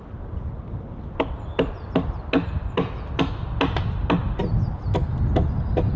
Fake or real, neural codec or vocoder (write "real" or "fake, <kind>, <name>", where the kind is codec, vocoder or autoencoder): real